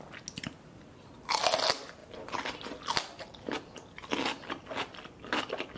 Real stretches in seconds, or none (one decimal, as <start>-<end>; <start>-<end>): 0.0-5.8